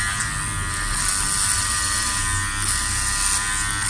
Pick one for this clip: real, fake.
real